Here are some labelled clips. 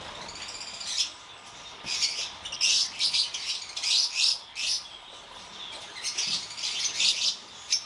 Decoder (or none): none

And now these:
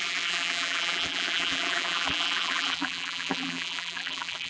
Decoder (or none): vocoder, BigVGAN v2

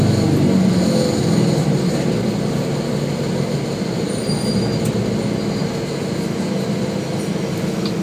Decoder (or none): none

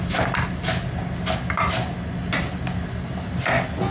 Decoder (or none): none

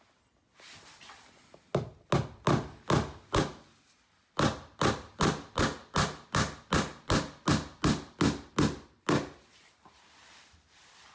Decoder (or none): none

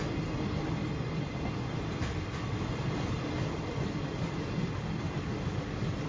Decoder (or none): none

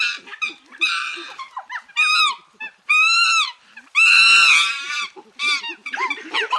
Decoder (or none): vocoder, BigVGAN v2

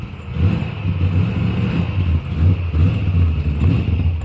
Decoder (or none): none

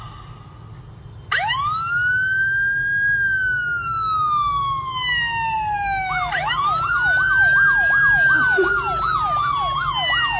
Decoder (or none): none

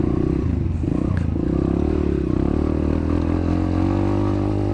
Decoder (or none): none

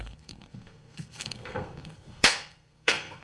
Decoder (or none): codec, SNAC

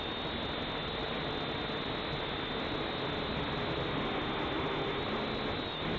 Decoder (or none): none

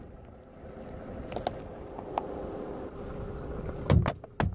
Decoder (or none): none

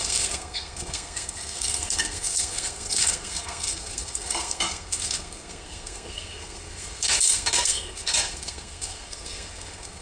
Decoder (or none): codec, SNAC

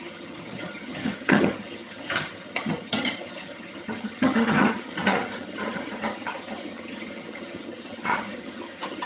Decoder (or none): vocoder, HiFi-GAN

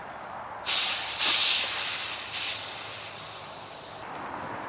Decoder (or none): none